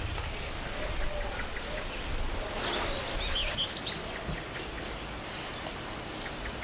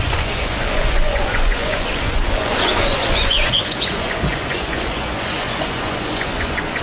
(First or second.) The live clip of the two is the first